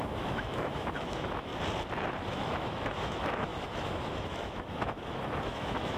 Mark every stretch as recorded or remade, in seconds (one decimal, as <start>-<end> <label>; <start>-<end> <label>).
0.0-1.5 remade; 1.5-2.2 recorded; 2.2-6.0 remade